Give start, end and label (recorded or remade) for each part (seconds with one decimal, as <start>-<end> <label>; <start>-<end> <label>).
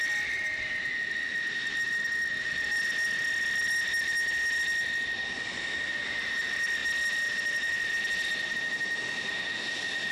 0.0-10.1 recorded